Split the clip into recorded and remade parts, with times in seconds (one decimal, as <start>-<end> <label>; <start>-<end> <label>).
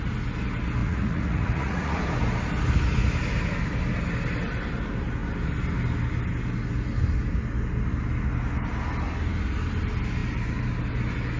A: 0.0-0.8 recorded; 0.8-2.0 remade; 2.0-11.4 recorded